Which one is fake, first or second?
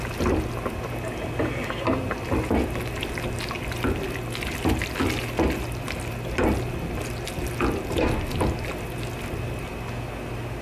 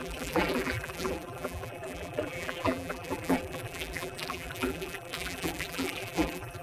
second